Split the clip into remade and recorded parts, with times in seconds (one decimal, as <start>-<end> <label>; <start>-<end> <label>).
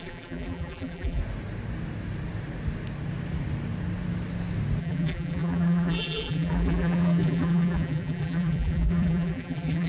0.0-1.2 remade; 1.2-4.8 recorded; 4.8-9.9 remade